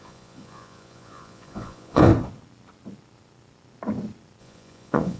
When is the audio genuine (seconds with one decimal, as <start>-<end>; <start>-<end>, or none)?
2.1-4.4